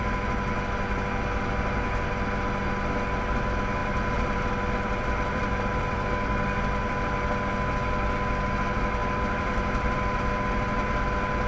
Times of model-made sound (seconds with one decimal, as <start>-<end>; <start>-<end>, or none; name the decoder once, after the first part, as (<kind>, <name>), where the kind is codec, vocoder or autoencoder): 3.8-6.1 (vocoder, BigVGAN v2); 9.0-10.3